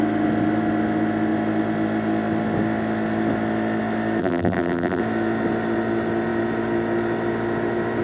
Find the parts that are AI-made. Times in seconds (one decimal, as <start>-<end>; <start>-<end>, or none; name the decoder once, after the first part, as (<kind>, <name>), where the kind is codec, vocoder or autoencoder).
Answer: 4.2-5.0 (vocoder, BigVGAN v2)